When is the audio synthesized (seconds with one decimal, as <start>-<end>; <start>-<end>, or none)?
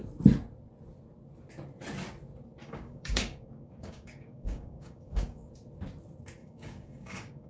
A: 2.6-5.5; 6.4-7.5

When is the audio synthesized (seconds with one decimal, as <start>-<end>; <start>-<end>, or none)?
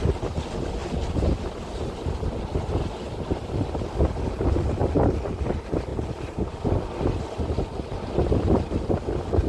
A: none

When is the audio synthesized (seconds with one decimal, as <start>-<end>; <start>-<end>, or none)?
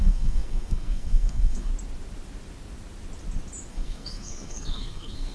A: 0.0-1.7; 3.7-5.3